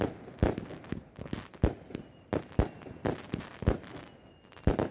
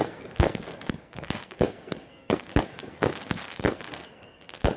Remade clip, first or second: second